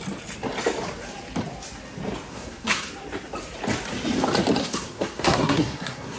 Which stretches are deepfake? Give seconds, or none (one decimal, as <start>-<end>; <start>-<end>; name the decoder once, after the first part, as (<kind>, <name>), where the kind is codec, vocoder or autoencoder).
2.3-2.9 (codec, SNAC); 4.6-6.2